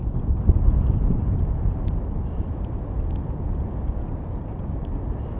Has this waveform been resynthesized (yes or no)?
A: no